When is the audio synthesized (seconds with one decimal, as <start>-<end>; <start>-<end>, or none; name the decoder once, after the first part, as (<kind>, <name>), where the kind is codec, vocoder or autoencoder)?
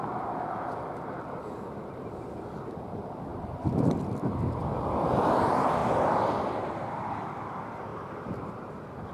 3.3-4.0 (vocoder, BigVGAN v2); 7.9-8.7